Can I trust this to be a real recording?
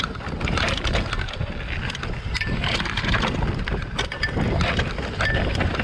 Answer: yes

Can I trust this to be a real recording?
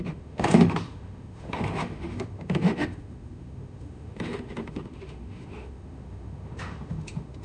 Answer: no